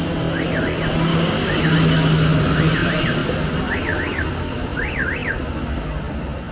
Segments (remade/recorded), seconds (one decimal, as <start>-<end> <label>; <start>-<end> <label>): 0.0-1.1 recorded; 1.1-1.6 remade; 1.6-6.5 recorded